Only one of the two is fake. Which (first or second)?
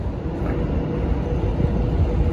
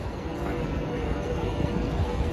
second